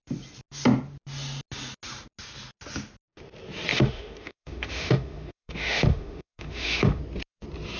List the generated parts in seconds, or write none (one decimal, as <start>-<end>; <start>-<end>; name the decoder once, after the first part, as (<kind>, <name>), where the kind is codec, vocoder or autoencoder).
3.7-7.0 (autoencoder, DAC-VAE)